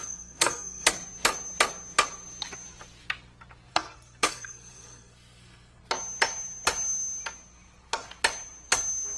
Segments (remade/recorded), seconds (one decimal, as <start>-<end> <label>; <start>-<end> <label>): 0.0-0.9 remade; 0.9-3.7 recorded; 3.7-5.8 remade; 5.8-9.2 recorded